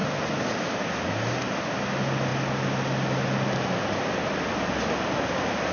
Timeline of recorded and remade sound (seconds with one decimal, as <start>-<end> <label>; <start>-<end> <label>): 0.0-5.7 recorded